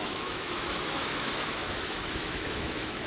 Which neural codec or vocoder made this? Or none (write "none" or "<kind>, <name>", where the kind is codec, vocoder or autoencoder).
autoencoder, DAC-VAE